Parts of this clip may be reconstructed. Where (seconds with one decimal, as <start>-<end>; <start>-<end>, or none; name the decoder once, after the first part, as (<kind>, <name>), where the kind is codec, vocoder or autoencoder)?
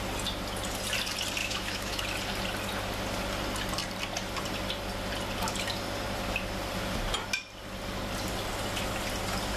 1.4-2.0 (autoencoder, DAC-VAE)